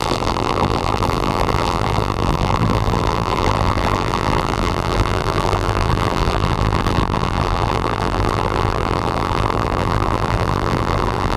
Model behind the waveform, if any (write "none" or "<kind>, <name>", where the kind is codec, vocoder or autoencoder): vocoder, BigVGAN v2